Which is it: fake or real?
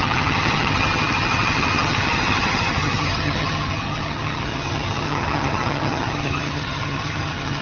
fake